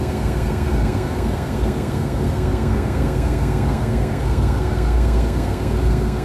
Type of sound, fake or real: fake